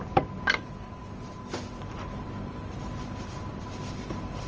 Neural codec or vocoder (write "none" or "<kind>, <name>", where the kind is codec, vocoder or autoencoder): none